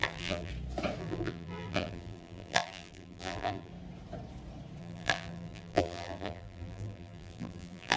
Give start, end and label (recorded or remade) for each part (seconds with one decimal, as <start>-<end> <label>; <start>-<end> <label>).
0.0-0.5 remade; 0.5-1.0 recorded; 1.0-3.7 remade; 3.7-4.8 recorded; 4.8-8.0 remade